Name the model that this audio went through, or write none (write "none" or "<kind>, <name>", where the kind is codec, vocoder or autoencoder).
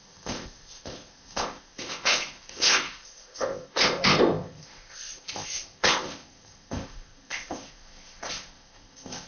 codec, ZipCodec